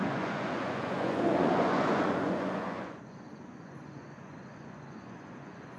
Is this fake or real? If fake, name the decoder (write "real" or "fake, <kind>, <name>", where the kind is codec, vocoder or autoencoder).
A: fake, vocoder, Vocos